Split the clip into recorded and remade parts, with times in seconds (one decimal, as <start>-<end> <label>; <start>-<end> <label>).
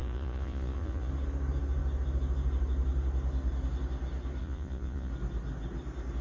0.0-1.1 remade; 1.1-4.4 recorded; 4.4-5.1 remade; 5.1-6.2 recorded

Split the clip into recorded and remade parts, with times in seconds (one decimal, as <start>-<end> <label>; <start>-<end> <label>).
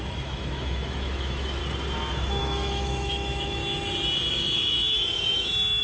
0.0-1.6 remade; 1.6-2.4 recorded; 2.4-3.6 remade; 3.6-4.3 recorded; 4.3-5.8 remade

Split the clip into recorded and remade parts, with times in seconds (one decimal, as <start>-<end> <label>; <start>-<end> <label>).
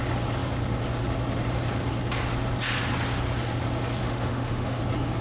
0.0-4.0 recorded; 4.0-4.8 remade; 4.8-5.2 recorded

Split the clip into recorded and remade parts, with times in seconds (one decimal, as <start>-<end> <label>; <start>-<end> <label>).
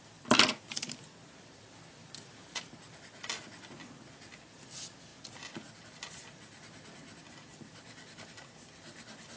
0.0-9.4 recorded